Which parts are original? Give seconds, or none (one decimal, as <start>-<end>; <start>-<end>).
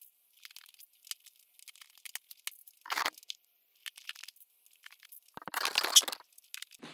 0.0-6.9